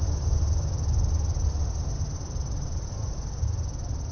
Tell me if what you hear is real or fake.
real